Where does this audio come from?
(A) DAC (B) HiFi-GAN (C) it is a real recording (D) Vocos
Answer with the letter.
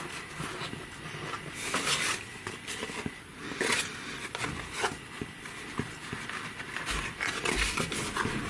C